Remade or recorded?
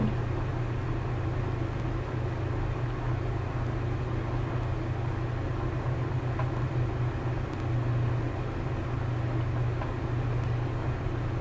recorded